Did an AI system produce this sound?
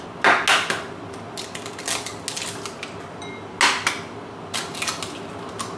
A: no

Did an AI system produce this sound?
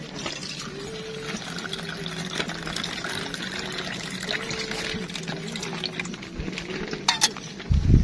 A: no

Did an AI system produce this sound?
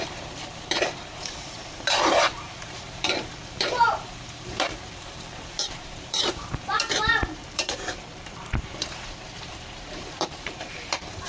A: yes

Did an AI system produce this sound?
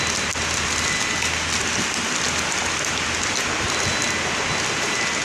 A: no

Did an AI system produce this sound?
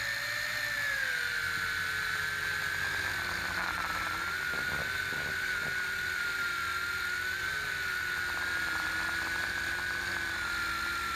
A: no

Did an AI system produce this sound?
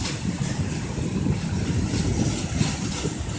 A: no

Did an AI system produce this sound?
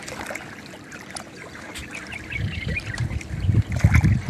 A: yes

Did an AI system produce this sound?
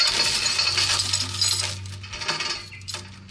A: no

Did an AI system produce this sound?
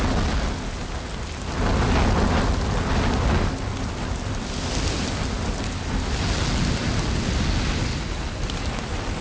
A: no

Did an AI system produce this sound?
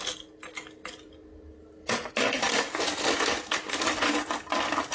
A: no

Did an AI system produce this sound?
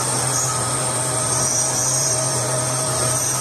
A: yes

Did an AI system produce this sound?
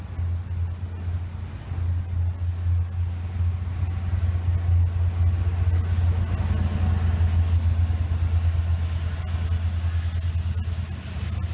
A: no